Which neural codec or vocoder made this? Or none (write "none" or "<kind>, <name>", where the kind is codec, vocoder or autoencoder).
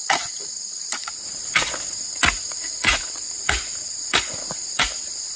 vocoder, Vocos